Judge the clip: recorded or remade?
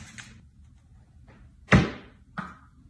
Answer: recorded